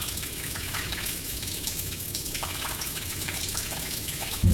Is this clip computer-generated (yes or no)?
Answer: yes